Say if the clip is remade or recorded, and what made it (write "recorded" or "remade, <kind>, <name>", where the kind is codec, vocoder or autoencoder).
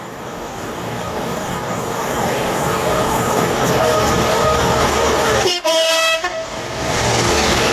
remade, codec, DAC